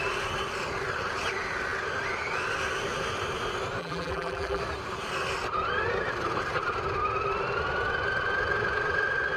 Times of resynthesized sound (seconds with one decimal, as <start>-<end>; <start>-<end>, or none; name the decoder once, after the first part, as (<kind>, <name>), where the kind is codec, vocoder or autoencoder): 3.8-4.6 (vocoder, BigVGAN v2)